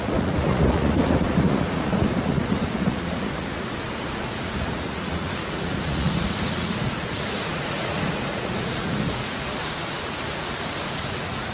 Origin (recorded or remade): remade